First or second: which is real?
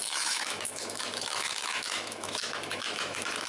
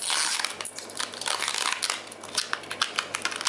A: second